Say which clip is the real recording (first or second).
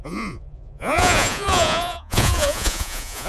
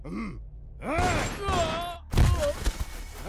second